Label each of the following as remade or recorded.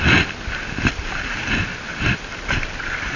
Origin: recorded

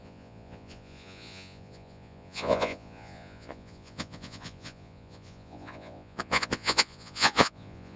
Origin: remade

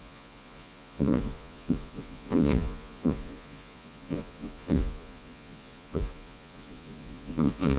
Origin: remade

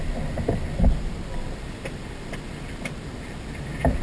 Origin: recorded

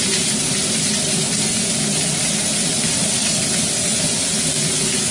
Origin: recorded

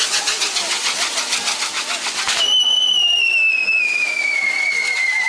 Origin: recorded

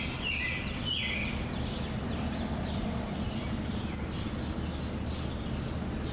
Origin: recorded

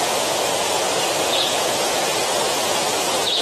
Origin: remade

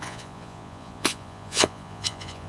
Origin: remade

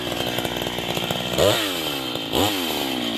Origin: recorded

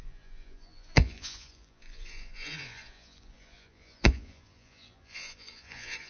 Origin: remade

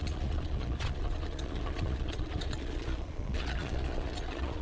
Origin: remade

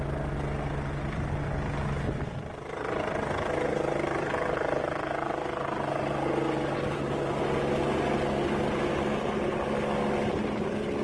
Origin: recorded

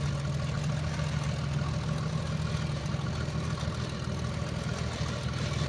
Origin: recorded